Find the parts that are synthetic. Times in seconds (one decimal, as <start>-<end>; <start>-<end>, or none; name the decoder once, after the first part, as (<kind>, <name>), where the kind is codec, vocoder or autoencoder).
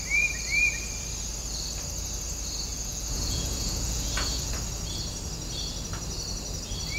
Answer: 2.7-4.5 (vocoder, Vocos)